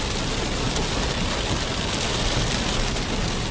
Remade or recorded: recorded